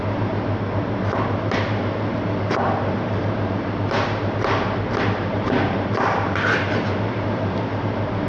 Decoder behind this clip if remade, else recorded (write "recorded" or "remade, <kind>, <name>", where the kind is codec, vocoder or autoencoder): remade, vocoder, BigVGAN v2